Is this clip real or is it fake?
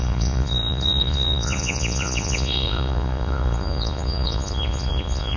fake